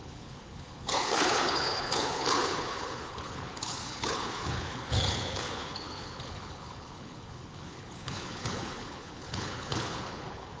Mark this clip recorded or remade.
remade